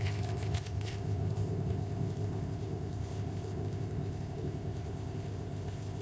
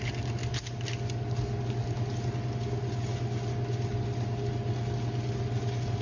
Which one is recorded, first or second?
second